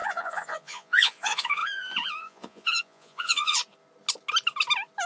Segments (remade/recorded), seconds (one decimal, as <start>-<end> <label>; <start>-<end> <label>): 0.0-3.6 remade; 3.6-5.1 recorded